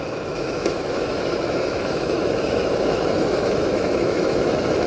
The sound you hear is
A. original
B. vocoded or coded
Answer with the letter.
B